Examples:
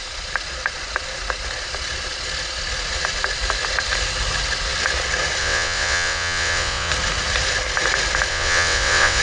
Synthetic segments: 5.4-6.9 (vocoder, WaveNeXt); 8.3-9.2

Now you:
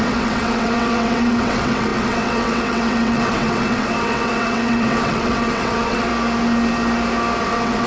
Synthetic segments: 0.0-6.1 (vocoder, WaveNeXt); 7.4-7.9

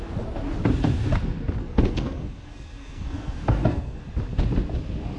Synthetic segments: 1.6-4.0 (codec, SNAC)

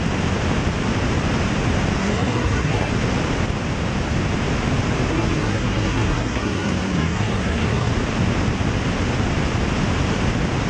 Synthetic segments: 2.0-2.9 (codec, SNAC); 5.1-7.9